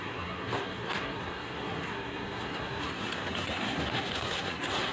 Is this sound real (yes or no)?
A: no